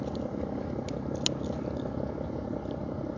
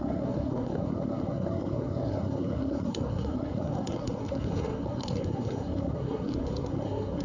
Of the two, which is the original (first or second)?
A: first